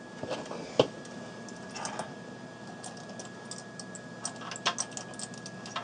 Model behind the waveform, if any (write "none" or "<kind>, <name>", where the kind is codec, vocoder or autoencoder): none